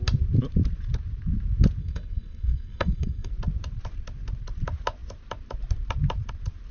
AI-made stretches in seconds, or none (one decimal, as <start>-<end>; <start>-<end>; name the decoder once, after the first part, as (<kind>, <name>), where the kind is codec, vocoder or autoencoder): 1.8-3.3 (codec, SNAC)

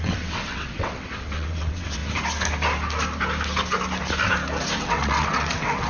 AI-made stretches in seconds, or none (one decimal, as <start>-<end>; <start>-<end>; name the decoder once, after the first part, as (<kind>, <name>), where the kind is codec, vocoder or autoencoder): 0.0-2.0 (vocoder, WaveNeXt); 4.8-5.9